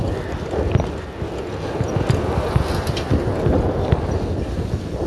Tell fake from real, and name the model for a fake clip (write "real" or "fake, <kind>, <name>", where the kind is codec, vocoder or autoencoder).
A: real